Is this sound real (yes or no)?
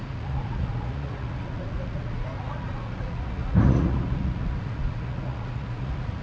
no